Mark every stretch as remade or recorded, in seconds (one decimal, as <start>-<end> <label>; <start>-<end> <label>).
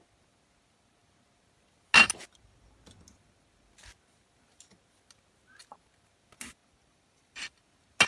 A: 0.0-6.6 recorded; 6.6-7.6 remade; 7.6-8.1 recorded